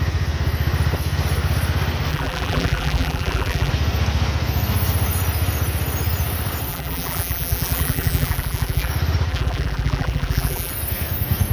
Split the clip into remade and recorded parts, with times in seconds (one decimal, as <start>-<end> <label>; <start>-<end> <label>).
0.0-2.1 recorded; 2.1-3.7 remade; 3.7-6.7 recorded; 6.7-8.9 remade; 8.9-9.3 recorded; 9.3-10.7 remade; 10.7-11.5 recorded